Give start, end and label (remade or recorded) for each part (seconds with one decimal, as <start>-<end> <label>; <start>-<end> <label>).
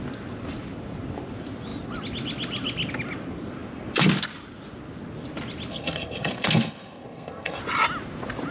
0.0-5.7 recorded; 5.7-7.6 remade; 7.6-8.5 recorded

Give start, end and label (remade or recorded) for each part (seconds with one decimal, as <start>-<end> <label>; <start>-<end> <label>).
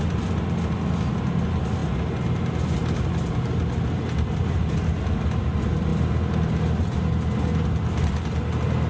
0.0-8.9 recorded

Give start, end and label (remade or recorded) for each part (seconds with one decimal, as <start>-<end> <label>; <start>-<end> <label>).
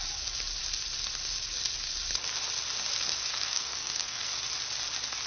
0.0-3.3 recorded; 3.3-4.3 remade; 4.3-5.3 recorded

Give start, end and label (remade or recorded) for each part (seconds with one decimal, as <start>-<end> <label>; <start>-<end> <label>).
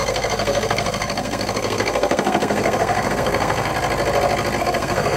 0.0-3.7 remade; 3.7-4.6 recorded; 4.6-5.2 remade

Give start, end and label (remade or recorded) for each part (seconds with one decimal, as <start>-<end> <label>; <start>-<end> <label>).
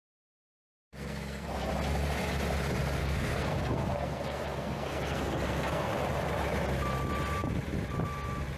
0.0-0.4 recorded; 0.4-1.7 remade; 1.7-3.0 recorded; 3.0-5.9 remade; 5.9-8.6 recorded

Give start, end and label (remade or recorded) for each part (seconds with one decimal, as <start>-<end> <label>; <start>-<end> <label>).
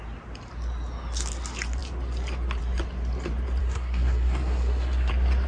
0.0-3.6 recorded; 3.6-5.1 remade; 5.1-5.5 recorded